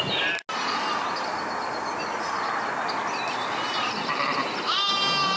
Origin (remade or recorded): recorded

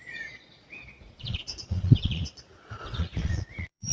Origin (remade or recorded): remade